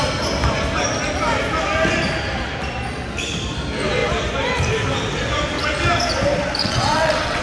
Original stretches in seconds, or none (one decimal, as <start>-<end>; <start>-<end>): 0.0-6.6